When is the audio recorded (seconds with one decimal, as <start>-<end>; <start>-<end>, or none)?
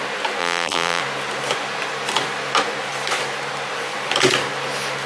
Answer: 0.0-0.4; 1.0-5.1